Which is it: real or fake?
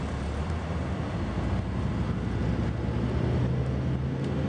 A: real